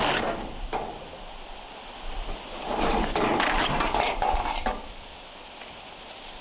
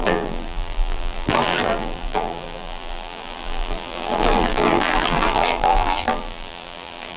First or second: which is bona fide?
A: first